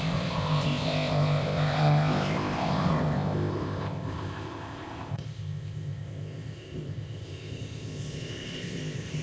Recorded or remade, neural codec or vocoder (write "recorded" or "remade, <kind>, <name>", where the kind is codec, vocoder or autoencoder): remade, codec, ZipCodec